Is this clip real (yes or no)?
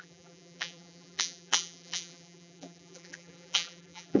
no